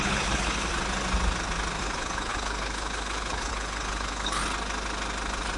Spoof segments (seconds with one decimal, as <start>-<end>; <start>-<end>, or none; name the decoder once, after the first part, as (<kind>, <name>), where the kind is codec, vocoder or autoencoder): 0.0-0.7 (codec, HILCodec); 1.8-4.4